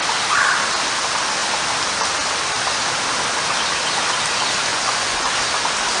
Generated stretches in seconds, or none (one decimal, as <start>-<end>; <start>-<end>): 4.7-5.3